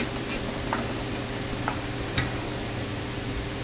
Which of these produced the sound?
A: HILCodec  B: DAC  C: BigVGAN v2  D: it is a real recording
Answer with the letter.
D